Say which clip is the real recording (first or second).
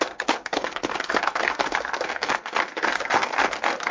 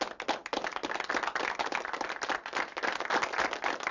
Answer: second